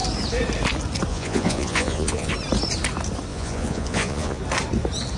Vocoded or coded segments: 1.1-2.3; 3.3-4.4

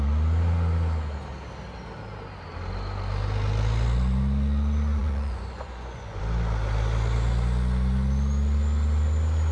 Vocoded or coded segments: 5.0-6.2

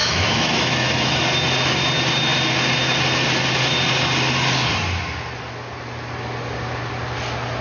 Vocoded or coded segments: 0.0-1.2